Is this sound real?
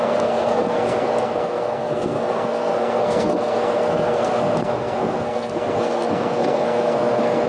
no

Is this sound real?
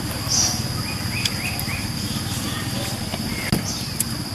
yes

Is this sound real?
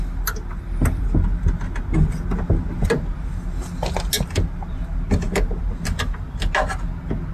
yes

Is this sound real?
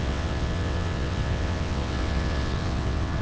no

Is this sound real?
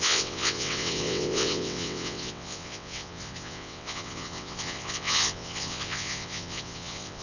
no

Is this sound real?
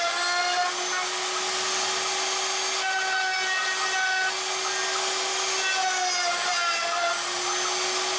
yes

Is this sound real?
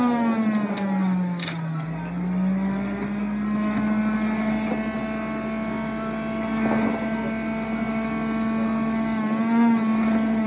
yes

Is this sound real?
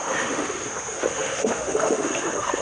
no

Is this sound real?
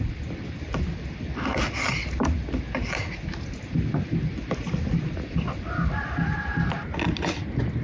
yes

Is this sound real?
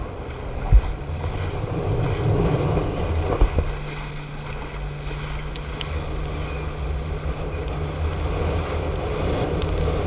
yes